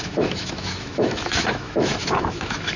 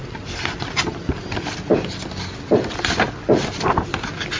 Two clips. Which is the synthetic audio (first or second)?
first